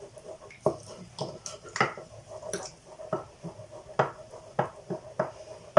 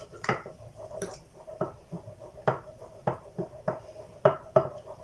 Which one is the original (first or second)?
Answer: first